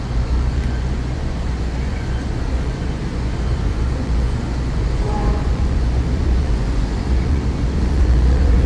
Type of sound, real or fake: fake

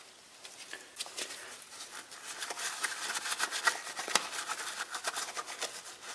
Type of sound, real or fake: real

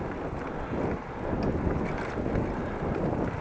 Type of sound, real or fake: real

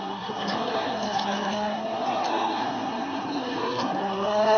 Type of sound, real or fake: fake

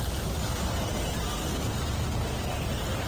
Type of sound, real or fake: real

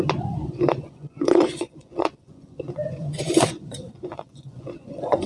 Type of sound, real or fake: fake